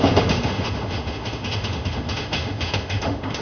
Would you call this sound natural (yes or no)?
no